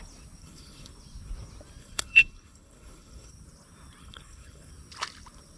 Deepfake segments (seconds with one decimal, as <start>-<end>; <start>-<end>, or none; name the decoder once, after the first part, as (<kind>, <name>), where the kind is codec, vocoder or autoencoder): 0.4-0.9 (codec, HILCodec); 1.8-3.3; 4.0-4.7